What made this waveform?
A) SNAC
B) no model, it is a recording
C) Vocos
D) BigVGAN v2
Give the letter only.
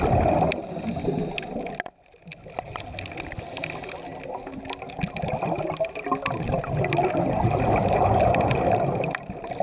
B